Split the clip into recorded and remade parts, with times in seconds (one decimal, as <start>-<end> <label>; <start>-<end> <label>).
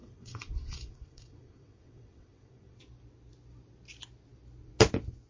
0.0-2.8 remade; 2.8-5.3 recorded